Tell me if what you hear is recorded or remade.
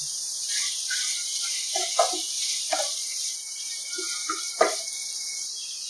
remade